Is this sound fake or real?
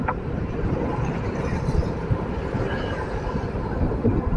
real